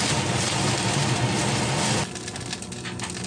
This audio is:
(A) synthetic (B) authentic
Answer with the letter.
B